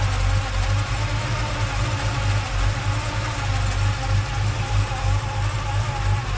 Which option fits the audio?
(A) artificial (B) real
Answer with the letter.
B